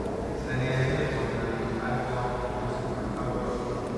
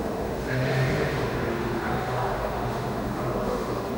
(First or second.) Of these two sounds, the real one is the first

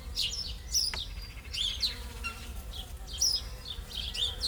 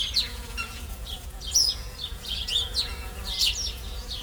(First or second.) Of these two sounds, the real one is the first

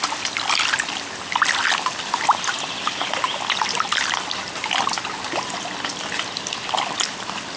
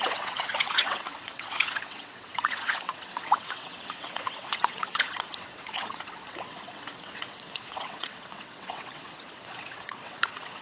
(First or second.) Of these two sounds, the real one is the first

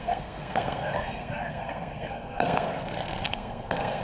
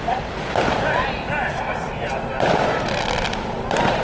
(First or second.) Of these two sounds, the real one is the second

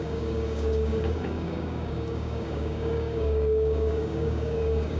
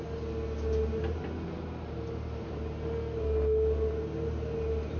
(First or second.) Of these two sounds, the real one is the second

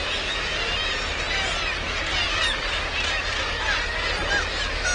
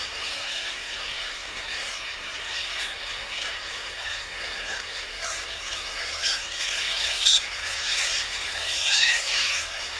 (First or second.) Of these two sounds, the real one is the first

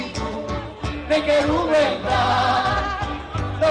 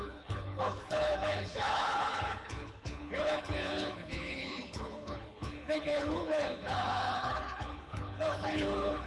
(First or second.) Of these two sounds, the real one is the first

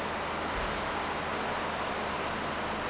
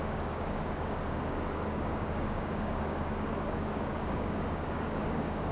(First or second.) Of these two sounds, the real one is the first